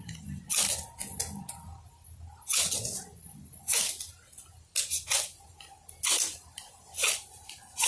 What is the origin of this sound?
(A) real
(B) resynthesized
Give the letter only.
A